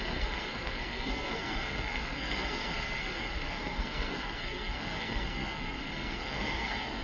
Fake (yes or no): yes